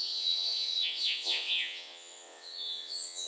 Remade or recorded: remade